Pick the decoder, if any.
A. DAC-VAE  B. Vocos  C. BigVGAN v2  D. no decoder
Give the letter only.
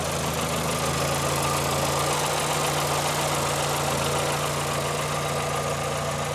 D